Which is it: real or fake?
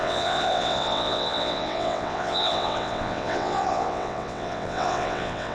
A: fake